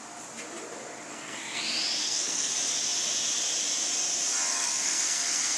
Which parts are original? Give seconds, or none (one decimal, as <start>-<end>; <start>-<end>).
0.0-1.1; 1.6-2.0; 2.5-4.5